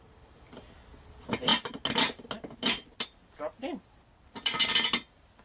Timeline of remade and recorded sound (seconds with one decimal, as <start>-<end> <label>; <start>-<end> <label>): 0.0-5.4 recorded